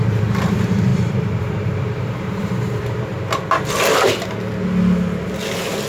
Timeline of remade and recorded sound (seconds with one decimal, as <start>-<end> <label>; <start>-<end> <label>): 0.0-3.1 remade; 3.1-5.9 recorded